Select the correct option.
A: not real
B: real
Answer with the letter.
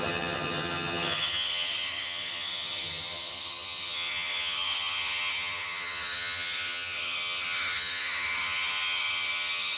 A